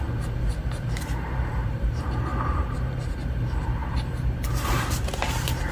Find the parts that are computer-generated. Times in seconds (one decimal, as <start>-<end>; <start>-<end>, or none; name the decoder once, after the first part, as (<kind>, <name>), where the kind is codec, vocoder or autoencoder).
0.0-5.7 (vocoder, BigVGAN v2)